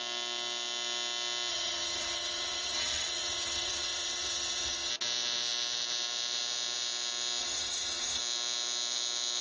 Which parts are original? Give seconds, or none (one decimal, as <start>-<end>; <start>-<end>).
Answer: 0.0-1.5; 4.9-7.4; 8.2-9.4